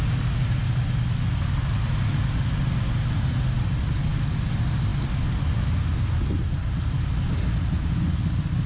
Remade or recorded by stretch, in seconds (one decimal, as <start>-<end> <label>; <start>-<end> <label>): 0.0-8.7 recorded